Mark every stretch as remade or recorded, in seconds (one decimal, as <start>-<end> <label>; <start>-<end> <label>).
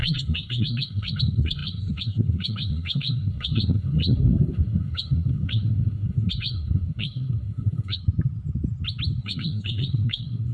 0.0-8.0 remade; 8.0-9.2 recorded; 9.2-10.5 remade